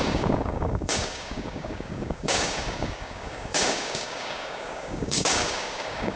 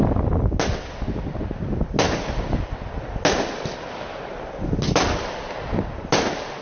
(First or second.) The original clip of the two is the second